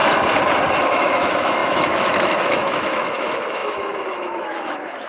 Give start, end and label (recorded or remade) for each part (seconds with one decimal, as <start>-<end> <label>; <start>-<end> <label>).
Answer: 0.0-0.8 recorded; 0.8-5.1 remade